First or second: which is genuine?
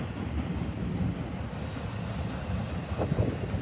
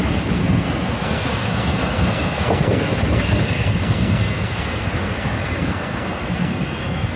first